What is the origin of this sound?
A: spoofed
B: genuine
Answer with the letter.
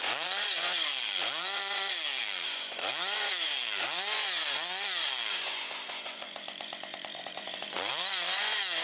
A